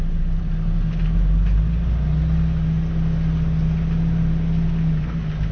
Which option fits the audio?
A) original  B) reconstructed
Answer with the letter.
A